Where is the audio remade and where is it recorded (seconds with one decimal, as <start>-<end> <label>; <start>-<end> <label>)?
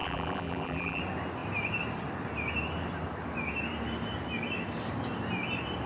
0.0-1.0 remade; 1.0-5.9 recorded